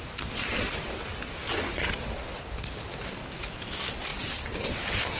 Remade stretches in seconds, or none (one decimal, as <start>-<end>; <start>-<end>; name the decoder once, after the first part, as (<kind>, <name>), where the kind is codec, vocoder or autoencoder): none